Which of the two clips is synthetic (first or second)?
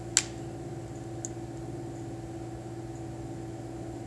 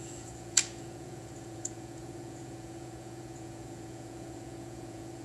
second